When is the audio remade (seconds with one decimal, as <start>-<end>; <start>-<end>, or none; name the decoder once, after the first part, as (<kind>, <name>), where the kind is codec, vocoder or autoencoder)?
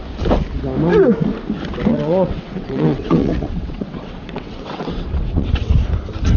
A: 1.9-5.7 (vocoder, WaveNeXt)